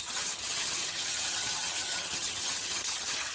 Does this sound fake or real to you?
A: fake